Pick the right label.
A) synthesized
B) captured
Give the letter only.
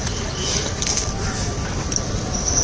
B